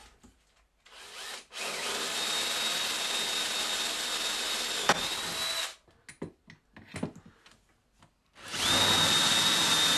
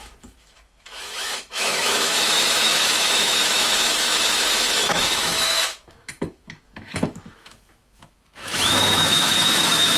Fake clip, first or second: second